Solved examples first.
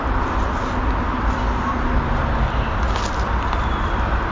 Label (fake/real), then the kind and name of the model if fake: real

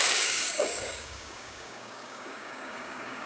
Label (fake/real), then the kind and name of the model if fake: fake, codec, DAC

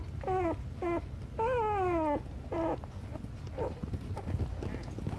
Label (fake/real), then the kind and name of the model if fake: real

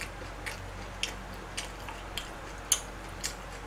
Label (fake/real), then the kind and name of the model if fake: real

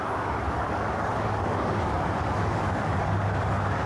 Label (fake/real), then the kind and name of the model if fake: fake, codec, DAC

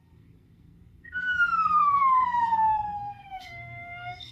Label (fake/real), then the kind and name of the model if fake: fake, codec, SNAC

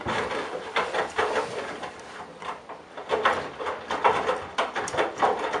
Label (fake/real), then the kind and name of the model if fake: real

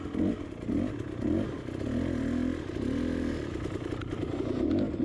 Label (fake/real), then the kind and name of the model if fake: real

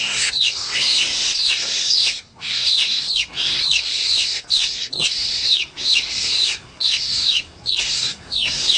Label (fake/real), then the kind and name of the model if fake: fake, codec, SNAC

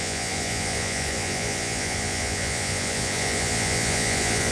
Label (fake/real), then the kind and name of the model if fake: fake, vocoder, Vocos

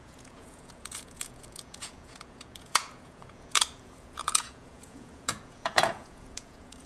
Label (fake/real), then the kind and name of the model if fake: fake, vocoder, Vocos